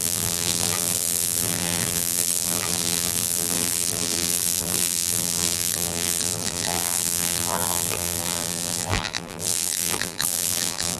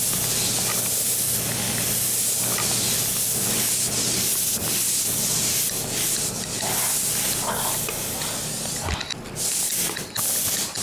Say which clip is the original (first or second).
second